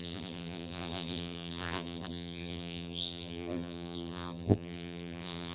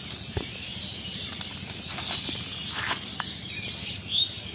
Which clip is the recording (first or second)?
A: second